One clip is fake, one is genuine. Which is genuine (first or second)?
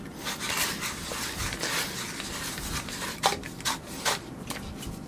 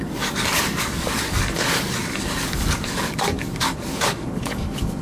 first